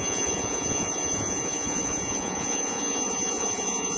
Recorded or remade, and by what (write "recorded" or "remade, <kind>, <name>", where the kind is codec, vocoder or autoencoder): remade, vocoder, Vocos